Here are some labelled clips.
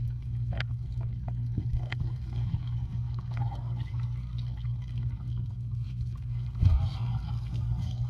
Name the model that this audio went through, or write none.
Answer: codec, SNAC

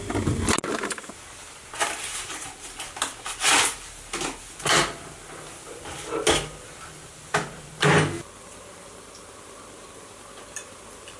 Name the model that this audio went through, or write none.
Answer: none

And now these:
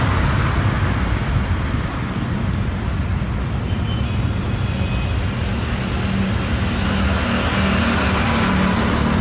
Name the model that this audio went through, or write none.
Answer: none